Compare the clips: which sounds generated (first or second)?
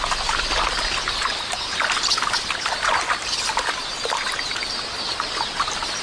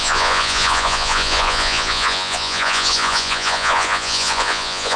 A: second